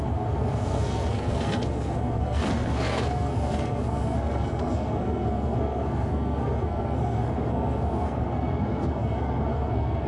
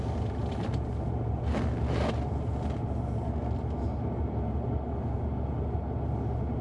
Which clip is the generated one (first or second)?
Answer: first